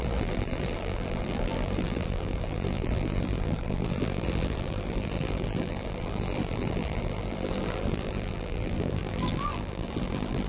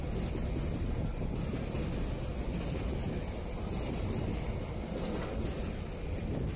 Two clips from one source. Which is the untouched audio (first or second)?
second